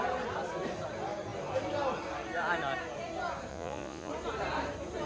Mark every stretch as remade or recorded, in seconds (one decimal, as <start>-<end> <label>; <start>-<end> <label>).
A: 0.0-3.5 recorded; 3.5-4.1 remade; 4.1-5.1 recorded